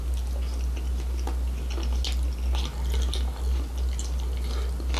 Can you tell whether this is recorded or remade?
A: recorded